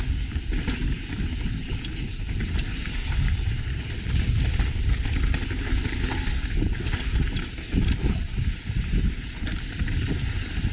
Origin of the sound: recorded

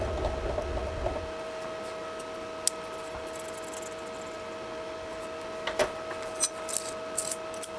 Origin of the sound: recorded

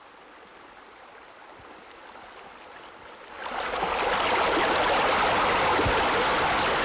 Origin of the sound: recorded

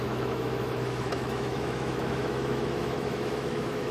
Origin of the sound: remade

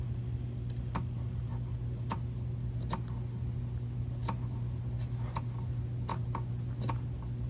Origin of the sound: recorded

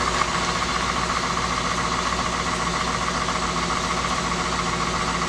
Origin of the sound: recorded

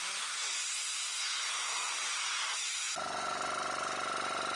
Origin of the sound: recorded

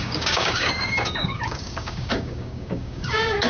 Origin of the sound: remade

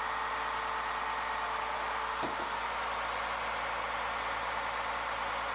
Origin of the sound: recorded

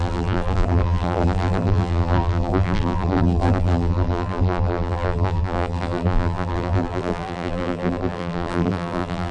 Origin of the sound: remade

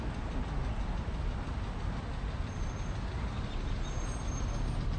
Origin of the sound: recorded